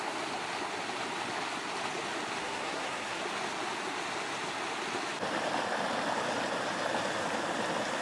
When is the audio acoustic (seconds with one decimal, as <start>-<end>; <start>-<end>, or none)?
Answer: 0.0-2.4; 3.2-8.0